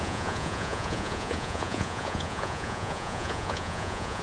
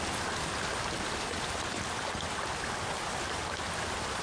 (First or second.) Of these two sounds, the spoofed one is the first